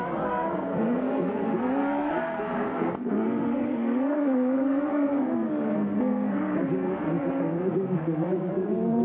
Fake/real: fake